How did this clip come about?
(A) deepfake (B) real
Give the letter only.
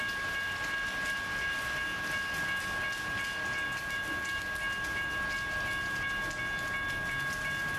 B